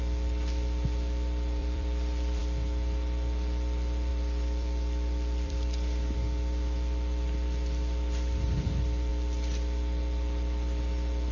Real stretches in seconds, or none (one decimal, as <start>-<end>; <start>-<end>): 0.0-1.6; 2.4-4.1; 9.1-11.3

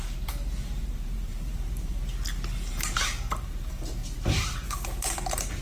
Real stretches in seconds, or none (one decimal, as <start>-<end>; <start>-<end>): 2.0-2.7

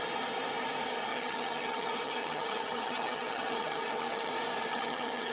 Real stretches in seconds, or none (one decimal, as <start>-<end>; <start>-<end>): 0.0-1.1; 4.3-4.7